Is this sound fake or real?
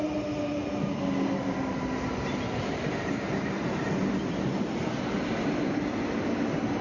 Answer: real